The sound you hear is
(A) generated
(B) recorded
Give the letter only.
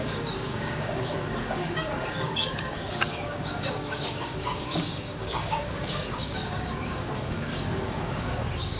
A